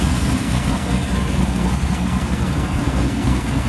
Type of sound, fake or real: fake